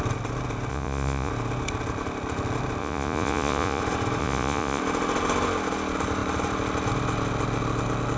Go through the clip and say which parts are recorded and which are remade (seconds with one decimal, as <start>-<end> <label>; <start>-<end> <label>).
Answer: 0.0-0.7 recorded; 0.7-1.3 remade; 1.3-2.8 recorded; 2.8-3.8 remade; 3.8-4.2 recorded; 4.2-4.8 remade; 4.8-8.2 recorded